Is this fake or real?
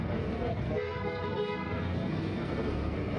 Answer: fake